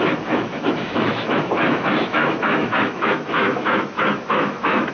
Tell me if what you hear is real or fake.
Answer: fake